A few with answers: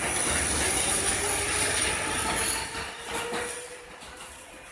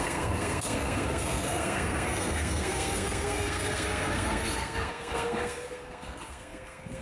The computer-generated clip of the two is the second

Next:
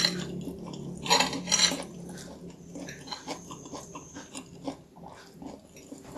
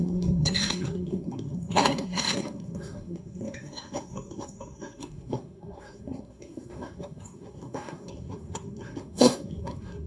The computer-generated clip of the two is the second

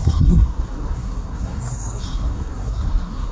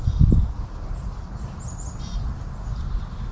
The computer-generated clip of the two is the first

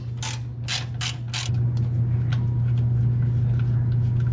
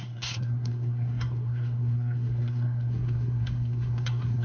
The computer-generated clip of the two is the second